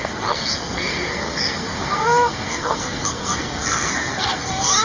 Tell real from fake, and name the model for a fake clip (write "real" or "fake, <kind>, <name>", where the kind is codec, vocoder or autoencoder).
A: fake, codec, SNAC